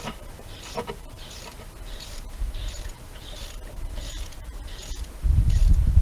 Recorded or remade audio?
remade